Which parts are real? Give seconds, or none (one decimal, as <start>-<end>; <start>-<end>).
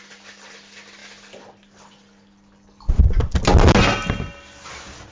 0.0-5.1